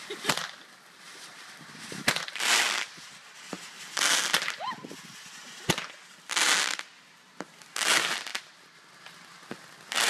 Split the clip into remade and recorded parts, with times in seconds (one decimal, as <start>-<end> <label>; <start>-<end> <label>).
0.0-10.1 recorded